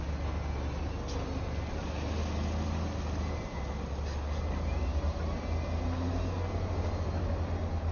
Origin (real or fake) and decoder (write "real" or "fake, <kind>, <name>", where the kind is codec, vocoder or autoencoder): real